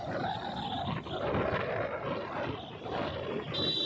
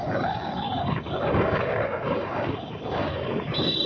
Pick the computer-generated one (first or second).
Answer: second